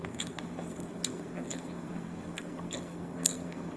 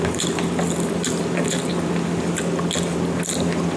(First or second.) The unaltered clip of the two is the second